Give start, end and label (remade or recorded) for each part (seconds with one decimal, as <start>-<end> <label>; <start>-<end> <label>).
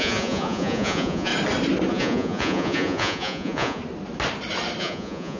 0.0-1.3 remade; 1.3-1.9 recorded; 1.9-3.8 remade; 3.8-4.8 recorded; 4.8-5.4 remade